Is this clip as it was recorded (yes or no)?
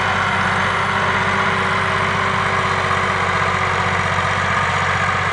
no